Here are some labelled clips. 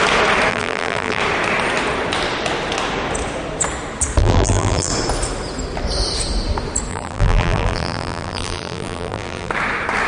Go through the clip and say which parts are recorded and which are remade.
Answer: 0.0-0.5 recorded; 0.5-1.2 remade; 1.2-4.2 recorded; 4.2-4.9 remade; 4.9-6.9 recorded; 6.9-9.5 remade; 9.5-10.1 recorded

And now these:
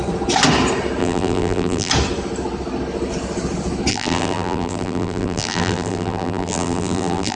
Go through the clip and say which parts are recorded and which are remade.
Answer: 0.0-1.0 recorded; 1.0-1.9 remade; 1.9-3.9 recorded; 3.9-7.4 remade

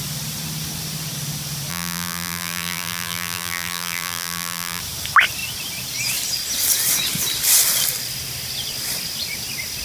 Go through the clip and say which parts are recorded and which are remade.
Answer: 0.0-1.7 recorded; 1.7-4.8 remade; 4.8-9.8 recorded